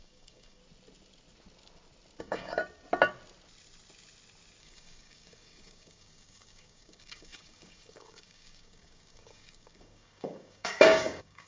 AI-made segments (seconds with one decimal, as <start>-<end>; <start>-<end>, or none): 0.0-0.6; 2.2-2.6; 4.6-11.5